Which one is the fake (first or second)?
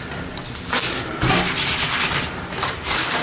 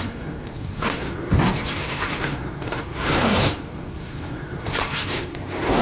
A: second